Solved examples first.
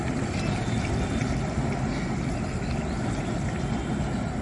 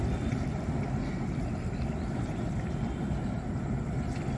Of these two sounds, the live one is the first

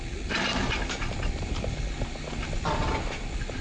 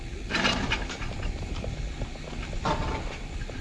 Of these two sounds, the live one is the first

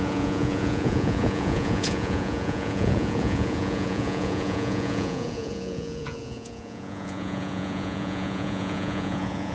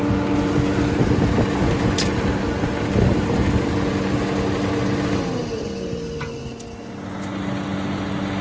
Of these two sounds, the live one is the second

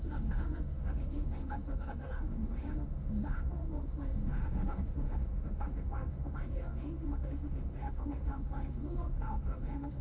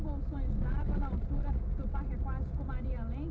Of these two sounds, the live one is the second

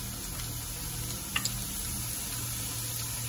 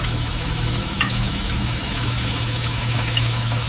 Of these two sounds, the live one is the first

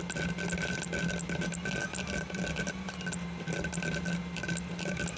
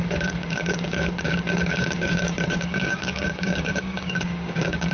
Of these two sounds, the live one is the first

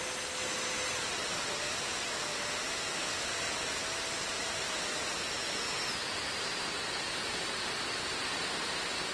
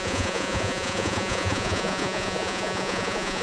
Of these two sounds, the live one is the first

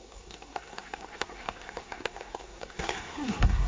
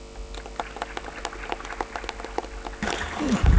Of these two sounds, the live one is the second